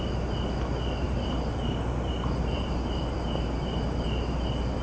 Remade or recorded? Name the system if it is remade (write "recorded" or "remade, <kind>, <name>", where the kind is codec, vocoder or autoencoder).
recorded